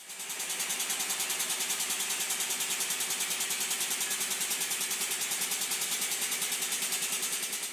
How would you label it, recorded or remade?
recorded